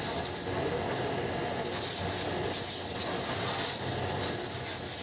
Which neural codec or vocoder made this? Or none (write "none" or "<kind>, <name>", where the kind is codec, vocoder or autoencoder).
none